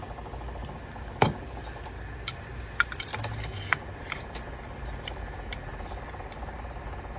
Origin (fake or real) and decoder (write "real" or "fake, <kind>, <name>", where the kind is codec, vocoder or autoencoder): real